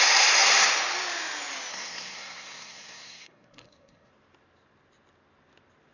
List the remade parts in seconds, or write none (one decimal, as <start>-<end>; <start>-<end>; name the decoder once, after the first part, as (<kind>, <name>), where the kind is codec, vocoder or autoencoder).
1.7-4.1 (codec, SNAC)